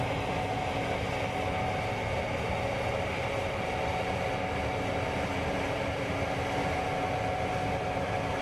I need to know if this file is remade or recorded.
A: recorded